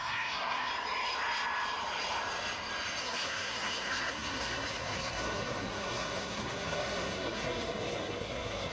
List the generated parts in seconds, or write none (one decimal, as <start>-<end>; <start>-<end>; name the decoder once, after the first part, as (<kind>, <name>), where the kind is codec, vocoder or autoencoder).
0.0-0.7 (codec, SNAC); 3.0-8.7